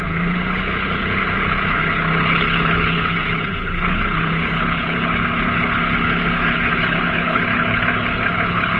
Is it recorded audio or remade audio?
remade